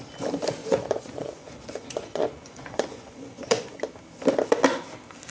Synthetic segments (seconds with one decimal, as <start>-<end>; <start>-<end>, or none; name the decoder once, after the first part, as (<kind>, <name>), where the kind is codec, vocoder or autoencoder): 0.6-3.8 (vocoder, Vocos)